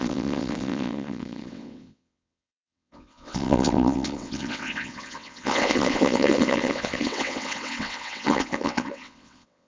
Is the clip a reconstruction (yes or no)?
yes